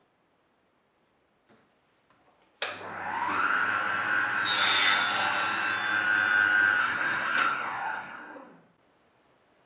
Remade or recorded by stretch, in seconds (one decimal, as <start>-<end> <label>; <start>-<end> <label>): 0.0-6.8 recorded; 6.8-8.5 remade; 8.5-9.7 recorded